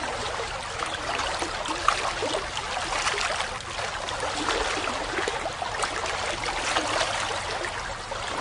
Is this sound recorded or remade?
recorded